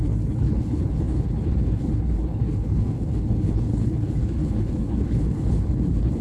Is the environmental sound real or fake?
fake